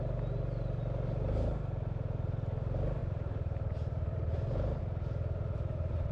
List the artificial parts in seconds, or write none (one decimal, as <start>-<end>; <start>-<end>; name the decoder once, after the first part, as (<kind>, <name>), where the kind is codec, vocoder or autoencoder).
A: 3.0-4.8 (vocoder, BigVGAN v2)